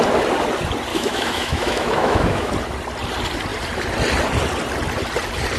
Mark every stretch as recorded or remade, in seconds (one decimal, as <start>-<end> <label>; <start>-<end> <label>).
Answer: 0.0-0.9 recorded; 0.9-2.5 remade; 2.5-5.6 recorded